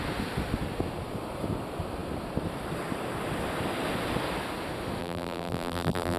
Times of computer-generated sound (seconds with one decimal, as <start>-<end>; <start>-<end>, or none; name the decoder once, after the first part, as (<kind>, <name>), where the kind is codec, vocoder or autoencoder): 5.0-6.2 (vocoder, BigVGAN v2)